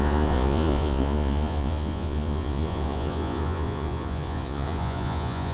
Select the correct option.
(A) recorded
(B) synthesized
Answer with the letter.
B